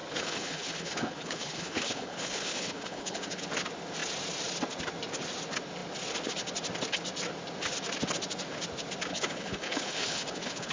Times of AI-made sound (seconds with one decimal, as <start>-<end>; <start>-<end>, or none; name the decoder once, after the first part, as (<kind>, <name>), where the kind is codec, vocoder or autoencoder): 0.0-3.4 (codec, HILCodec); 9.1-10.7